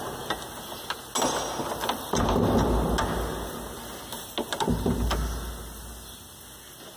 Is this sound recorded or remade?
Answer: recorded